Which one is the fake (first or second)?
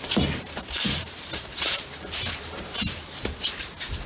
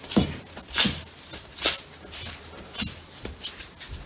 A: first